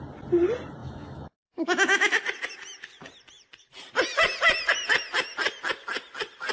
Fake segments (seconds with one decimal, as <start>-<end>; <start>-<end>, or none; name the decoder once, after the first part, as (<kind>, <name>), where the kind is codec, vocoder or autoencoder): 0.8-2.2 (autoencoder, DAC-VAE)